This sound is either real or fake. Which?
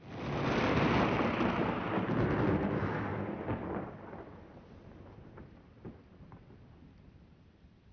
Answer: real